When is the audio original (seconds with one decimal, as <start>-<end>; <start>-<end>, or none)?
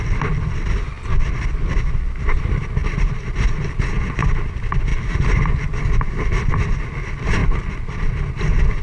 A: 0.0-8.8